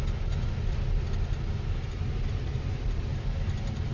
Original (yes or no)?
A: yes